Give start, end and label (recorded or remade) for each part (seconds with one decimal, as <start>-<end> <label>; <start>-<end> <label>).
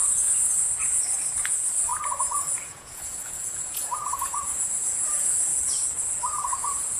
0.0-5.5 remade; 5.5-6.0 recorded; 6.0-7.0 remade